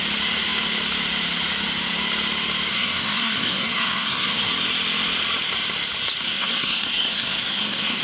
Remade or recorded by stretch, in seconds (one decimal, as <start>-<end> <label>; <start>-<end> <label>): 0.0-2.7 recorded; 2.7-4.5 remade; 4.5-6.3 recorded; 6.3-8.0 remade